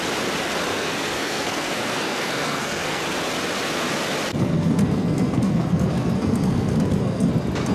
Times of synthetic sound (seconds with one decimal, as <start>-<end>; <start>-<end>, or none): 0.7-3.0; 4.3-7.3